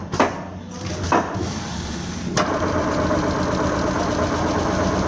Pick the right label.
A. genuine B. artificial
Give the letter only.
A